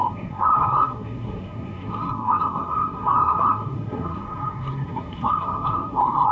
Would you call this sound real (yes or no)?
no